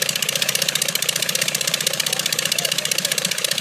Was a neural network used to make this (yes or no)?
yes